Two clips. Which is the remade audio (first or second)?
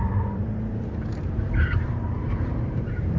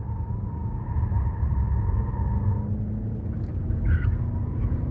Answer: first